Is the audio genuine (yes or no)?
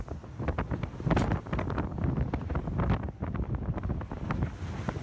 yes